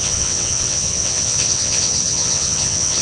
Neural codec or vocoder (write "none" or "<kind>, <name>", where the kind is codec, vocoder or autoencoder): vocoder, WaveNeXt